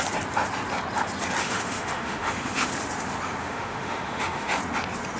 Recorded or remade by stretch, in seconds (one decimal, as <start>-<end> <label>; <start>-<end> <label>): 0.0-1.4 recorded; 1.4-2.7 remade; 2.7-3.4 recorded; 3.4-4.6 remade; 4.6-5.2 recorded